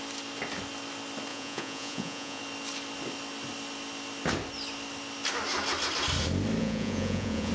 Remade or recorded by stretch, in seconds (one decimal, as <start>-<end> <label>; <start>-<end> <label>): 0.0-1.3 recorded; 1.3-2.4 remade; 2.4-6.6 recorded; 6.6-7.5 remade